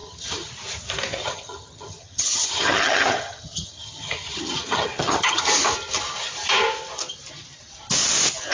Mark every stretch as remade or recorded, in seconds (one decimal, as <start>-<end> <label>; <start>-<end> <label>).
0.0-0.5 remade; 0.5-1.2 recorded; 1.2-5.4 remade; 5.4-8.5 recorded